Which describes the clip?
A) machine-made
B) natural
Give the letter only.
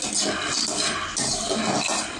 B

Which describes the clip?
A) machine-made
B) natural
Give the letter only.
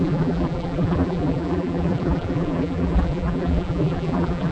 A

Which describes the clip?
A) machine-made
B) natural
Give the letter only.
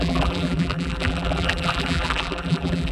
A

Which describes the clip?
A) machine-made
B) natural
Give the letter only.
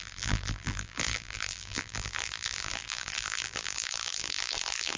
A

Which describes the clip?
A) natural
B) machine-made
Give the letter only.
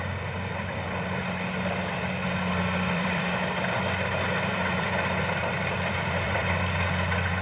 B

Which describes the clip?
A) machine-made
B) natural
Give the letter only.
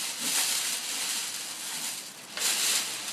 B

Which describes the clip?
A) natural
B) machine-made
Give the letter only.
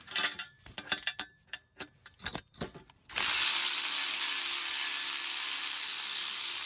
A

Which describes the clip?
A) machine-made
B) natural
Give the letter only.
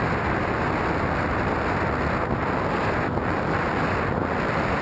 B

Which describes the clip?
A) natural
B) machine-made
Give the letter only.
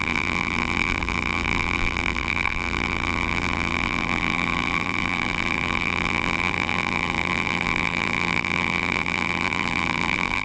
B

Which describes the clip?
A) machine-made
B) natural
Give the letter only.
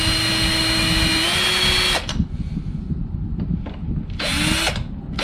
B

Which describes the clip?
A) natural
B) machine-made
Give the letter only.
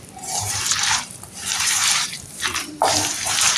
B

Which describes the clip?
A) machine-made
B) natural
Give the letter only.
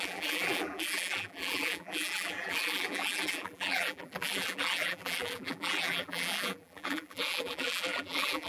A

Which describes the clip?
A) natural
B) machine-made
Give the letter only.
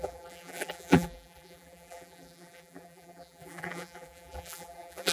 B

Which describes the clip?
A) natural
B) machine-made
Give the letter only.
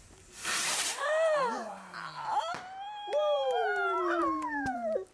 B